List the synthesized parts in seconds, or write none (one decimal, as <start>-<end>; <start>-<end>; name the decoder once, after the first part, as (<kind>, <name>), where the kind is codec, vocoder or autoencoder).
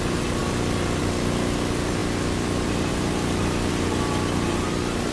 none